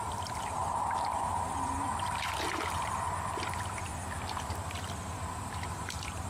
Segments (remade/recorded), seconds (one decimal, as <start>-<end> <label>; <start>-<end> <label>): 0.0-3.9 remade; 3.9-4.7 recorded; 4.7-6.3 remade